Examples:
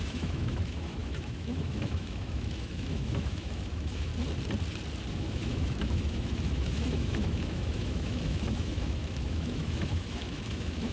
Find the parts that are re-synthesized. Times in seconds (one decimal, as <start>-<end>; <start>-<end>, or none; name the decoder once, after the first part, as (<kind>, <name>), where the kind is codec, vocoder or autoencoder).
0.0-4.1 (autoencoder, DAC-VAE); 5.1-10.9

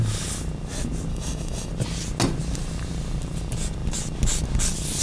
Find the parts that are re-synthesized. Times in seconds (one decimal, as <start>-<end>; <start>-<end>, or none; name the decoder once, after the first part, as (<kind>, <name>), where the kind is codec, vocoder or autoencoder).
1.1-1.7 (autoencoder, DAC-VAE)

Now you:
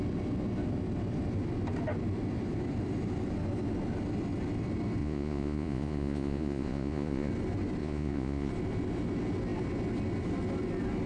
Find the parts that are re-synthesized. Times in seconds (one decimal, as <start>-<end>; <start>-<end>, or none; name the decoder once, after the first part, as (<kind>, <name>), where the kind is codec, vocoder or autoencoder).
5.0-7.3 (vocoder, Vocos); 7.8-8.5

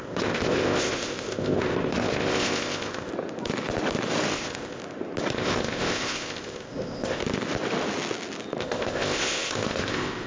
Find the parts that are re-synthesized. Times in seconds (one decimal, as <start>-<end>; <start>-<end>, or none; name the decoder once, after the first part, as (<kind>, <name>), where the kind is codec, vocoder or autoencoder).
0.0-3.1 (codec, ZipCodec); 4.3-4.8; 5.3-7.2; 8.6-10.3

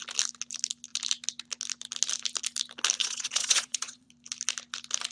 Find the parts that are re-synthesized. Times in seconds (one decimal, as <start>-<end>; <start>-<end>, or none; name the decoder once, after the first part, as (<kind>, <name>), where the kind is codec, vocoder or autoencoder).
3.0-4.1 (vocoder, Vocos)